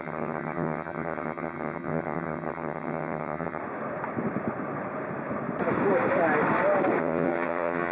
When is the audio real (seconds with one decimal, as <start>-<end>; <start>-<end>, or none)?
3.6-7.0